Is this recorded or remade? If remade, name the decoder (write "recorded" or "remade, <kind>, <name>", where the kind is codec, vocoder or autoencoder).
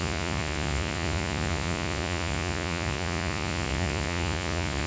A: remade, vocoder, Vocos